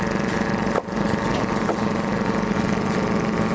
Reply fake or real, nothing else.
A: real